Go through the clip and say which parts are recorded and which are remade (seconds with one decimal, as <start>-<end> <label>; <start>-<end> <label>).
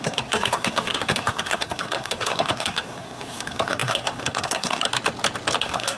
0.0-4.9 remade; 4.9-5.6 recorded; 5.6-6.0 remade